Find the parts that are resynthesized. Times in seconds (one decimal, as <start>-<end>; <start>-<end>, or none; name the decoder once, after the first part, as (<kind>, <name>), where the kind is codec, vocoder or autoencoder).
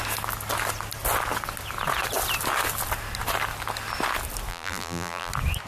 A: 4.5-5.3 (vocoder, BigVGAN v2)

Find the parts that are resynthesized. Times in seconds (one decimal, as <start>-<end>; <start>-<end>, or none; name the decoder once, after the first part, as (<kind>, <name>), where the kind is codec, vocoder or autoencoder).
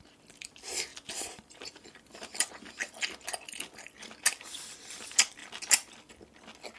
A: 0.9-2.5 (vocoder, BigVGAN v2)